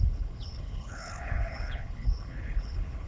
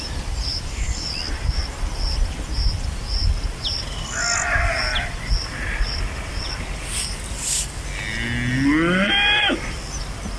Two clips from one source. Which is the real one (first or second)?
second